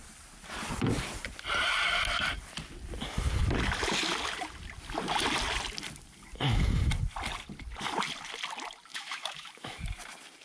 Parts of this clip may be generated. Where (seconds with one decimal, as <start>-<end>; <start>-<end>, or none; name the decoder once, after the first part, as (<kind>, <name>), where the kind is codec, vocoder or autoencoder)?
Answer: 8.9-9.8 (autoencoder, DAC-VAE)